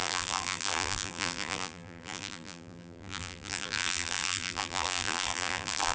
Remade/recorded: remade